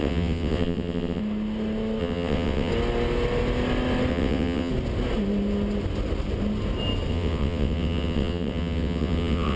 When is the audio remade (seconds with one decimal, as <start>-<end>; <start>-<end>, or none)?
0.0-1.2; 2.0-2.7; 4.1-4.7; 7.1-9.6